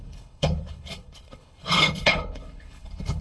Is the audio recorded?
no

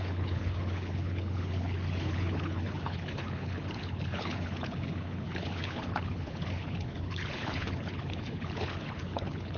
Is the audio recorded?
no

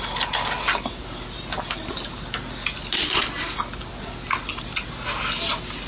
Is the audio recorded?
yes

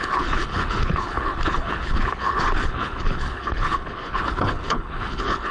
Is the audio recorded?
no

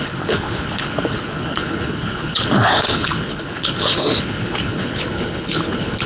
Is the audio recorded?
no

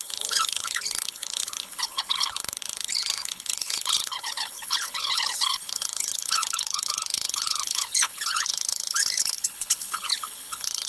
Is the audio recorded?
no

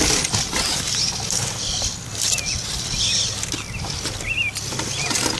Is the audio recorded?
yes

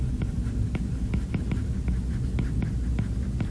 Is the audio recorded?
yes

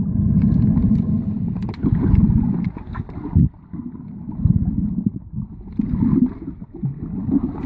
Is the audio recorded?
yes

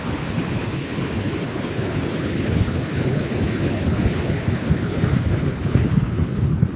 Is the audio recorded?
no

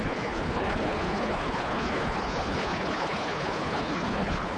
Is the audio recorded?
no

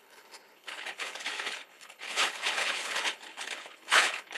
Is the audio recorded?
no